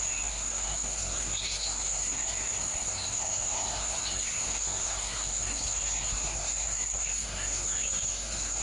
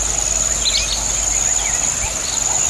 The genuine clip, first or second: second